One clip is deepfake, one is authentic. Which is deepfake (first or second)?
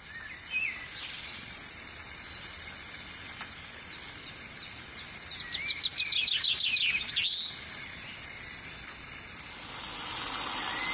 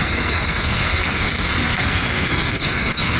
second